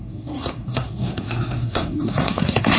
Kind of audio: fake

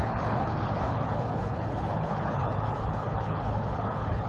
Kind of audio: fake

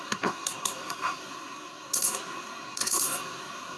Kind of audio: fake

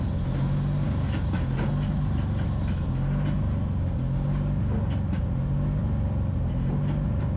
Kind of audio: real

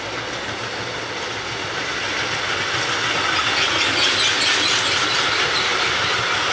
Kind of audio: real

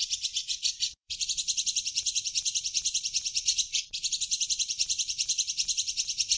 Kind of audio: fake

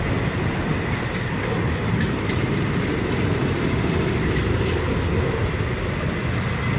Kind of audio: real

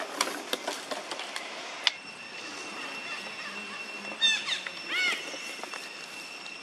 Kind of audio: real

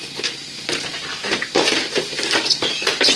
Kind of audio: real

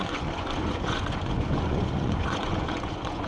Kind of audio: fake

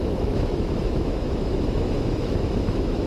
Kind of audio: fake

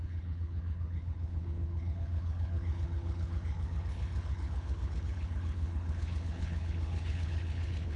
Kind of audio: fake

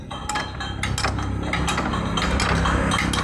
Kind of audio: real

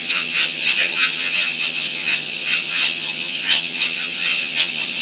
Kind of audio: fake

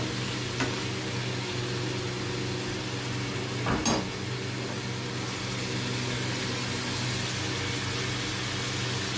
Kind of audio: real